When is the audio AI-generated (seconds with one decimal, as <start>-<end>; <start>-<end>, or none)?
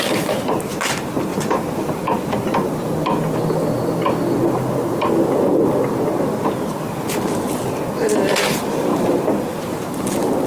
none